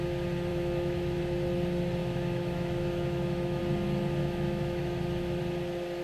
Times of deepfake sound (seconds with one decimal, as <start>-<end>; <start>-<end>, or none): 0.5-1.2; 2.0-3.6; 4.2-5.4